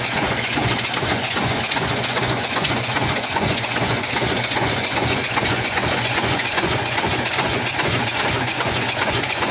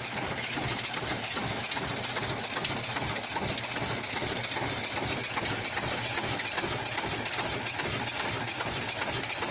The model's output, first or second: first